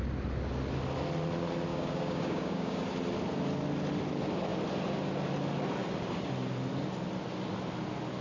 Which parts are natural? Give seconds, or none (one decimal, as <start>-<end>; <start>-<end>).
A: 0.0-1.7; 2.8-8.2